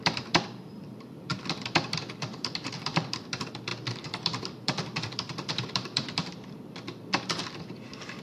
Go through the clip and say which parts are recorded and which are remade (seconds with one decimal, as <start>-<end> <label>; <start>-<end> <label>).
0.0-8.2 remade

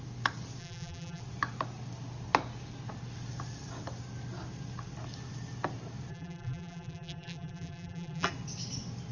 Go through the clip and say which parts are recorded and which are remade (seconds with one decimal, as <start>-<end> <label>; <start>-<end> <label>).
0.0-0.6 recorded; 0.6-1.2 remade; 1.2-6.1 recorded; 6.1-8.3 remade; 8.3-9.1 recorded